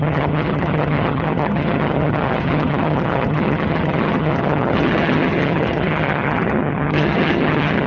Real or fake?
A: fake